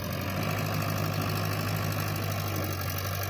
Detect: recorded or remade recorded